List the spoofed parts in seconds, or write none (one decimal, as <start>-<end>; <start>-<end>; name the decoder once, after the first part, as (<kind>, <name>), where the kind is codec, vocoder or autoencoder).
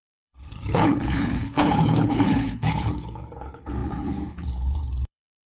0.0-5.5 (codec, HILCodec)